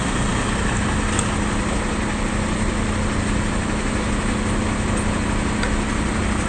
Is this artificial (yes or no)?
no